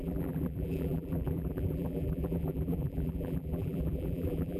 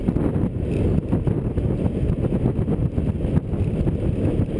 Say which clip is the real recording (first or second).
second